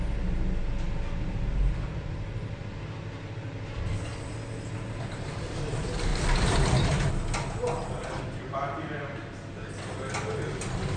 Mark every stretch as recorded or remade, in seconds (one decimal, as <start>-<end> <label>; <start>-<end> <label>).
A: 0.0-0.6 recorded; 0.6-2.6 remade; 2.6-6.1 recorded; 6.1-7.1 remade; 7.1-8.0 recorded; 8.0-9.3 remade; 9.3-11.0 recorded